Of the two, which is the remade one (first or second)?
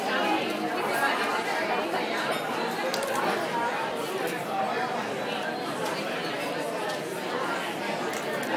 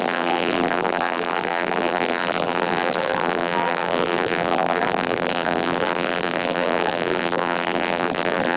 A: second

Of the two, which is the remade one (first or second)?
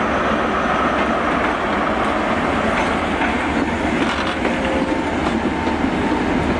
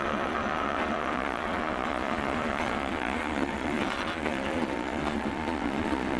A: second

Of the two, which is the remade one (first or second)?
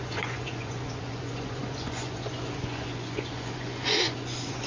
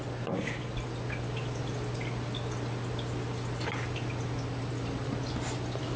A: first